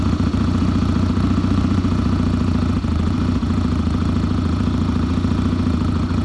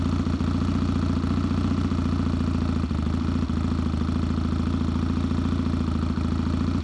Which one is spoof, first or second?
first